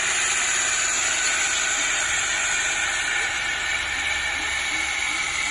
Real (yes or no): yes